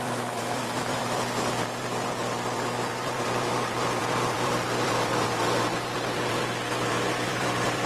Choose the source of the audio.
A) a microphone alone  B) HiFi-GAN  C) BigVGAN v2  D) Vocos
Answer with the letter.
C